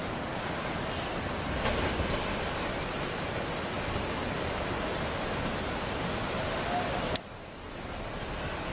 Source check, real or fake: real